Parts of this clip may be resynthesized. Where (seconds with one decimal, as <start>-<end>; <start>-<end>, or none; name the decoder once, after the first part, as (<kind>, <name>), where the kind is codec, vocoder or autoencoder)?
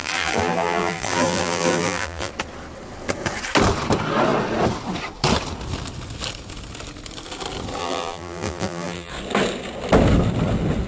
0.0-2.3 (vocoder, BigVGAN v2); 7.8-9.1